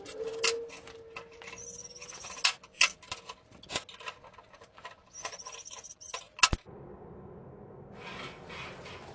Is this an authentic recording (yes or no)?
yes